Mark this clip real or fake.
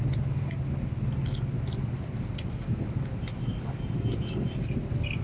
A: real